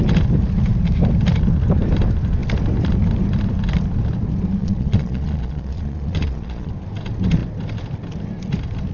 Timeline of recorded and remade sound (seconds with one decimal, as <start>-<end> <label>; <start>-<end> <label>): 0.0-4.6 recorded; 4.6-6.7 remade; 6.7-8.9 recorded